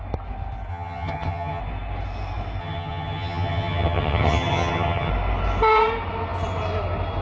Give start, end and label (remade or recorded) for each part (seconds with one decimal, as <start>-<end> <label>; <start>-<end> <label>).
0.0-0.7 recorded; 0.7-1.6 remade; 1.6-2.6 recorded; 2.6-5.1 remade; 5.1-7.2 recorded